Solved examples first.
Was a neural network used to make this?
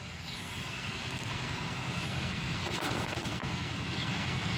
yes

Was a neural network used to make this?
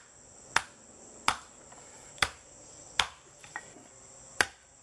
no